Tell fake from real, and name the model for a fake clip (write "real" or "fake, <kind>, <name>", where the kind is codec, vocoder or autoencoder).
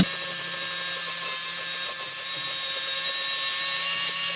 real